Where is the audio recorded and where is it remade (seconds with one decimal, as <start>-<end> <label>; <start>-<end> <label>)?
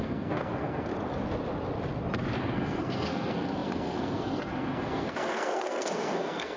0.0-0.9 remade; 0.9-2.4 recorded; 2.4-6.6 remade